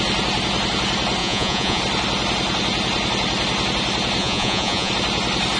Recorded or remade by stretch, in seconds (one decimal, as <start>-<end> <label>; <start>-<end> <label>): 0.0-1.2 recorded; 1.2-1.8 remade; 1.8-4.2 recorded; 4.2-4.9 remade; 4.9-5.6 recorded